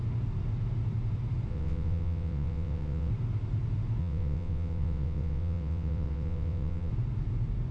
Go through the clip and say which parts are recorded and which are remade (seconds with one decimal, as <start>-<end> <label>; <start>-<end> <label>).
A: 0.0-1.5 recorded; 1.5-3.1 remade; 3.1-4.0 recorded; 4.0-6.9 remade; 6.9-7.7 recorded